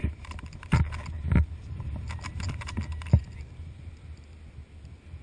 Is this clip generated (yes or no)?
no